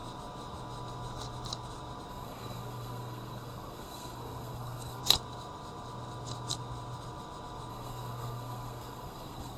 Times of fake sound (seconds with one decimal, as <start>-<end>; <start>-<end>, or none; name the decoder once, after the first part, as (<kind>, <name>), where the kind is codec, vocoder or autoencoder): 2.1-5.0 (codec, SNAC); 7.7-9.6